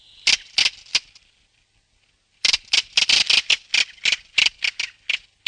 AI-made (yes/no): yes